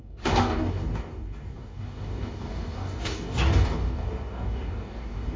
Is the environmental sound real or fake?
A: fake